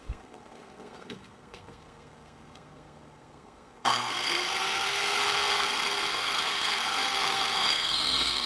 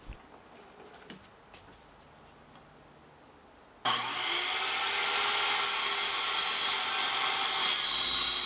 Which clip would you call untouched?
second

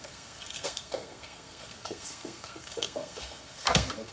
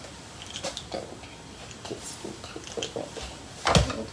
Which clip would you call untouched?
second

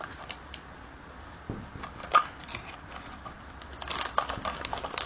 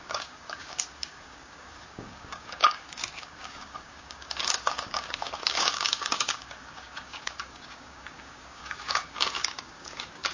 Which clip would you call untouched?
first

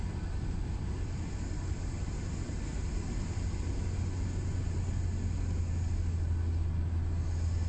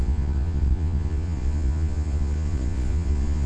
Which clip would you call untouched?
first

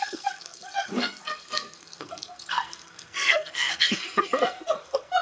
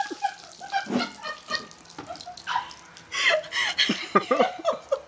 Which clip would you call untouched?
second